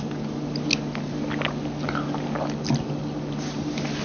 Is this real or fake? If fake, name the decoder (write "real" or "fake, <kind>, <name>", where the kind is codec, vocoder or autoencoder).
real